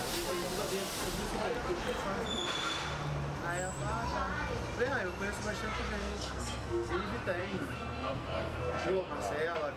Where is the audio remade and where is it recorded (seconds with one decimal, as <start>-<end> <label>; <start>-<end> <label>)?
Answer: 0.0-6.0 recorded; 6.0-6.9 remade; 6.9-7.4 recorded; 7.4-9.1 remade; 9.1-9.8 recorded